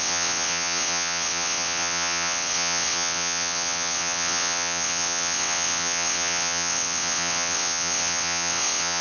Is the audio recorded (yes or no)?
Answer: no